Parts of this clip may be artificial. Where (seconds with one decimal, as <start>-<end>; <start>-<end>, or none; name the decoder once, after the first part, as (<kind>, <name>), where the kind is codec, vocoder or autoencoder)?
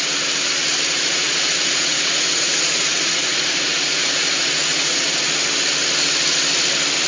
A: 0.9-5.2 (vocoder, Vocos)